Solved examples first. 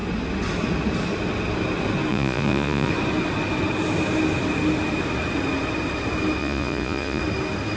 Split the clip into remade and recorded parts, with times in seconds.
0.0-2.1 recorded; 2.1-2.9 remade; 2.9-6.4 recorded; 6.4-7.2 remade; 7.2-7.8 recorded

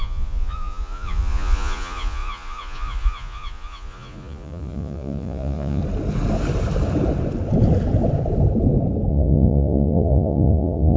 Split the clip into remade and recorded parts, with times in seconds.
0.0-5.8 remade; 5.8-9.1 recorded; 9.1-11.0 remade

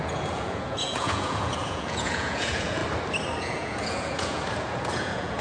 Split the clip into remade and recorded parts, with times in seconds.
0.0-2.8 remade; 2.8-3.4 recorded; 3.4-5.4 remade

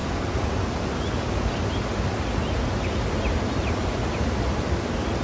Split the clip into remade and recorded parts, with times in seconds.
0.0-5.2 recorded

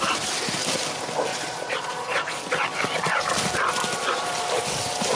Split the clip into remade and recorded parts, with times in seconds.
0.0-1.3 recorded; 1.3-2.4 remade; 2.4-5.2 recorded

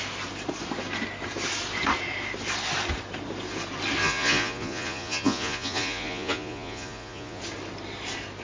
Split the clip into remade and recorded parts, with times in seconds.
0.0-4.0 recorded; 4.0-7.4 remade; 7.4-8.4 recorded

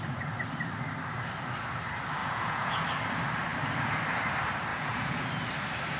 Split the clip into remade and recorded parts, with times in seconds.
0.0-2.2 recorded; 2.2-2.8 remade; 2.8-4.7 recorded; 4.7-5.2 remade; 5.2-6.0 recorded

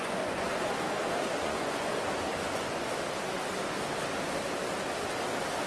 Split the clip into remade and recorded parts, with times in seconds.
0.0-0.5 remade; 0.5-1.4 recorded; 1.4-1.9 remade; 1.9-2.5 recorded; 2.5-2.9 remade; 2.9-5.7 recorded